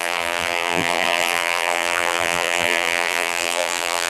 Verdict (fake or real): fake